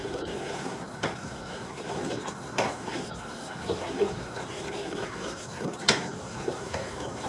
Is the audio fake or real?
fake